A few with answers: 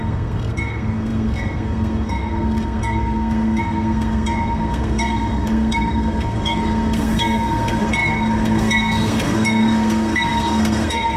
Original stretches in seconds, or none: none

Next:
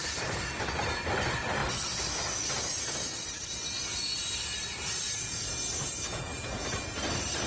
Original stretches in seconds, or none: 0.0-7.5